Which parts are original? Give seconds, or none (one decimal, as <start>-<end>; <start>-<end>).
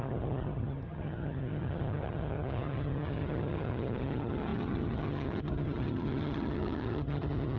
none